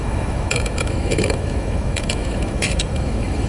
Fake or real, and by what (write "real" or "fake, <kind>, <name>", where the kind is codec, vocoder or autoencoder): fake, autoencoder, DAC-VAE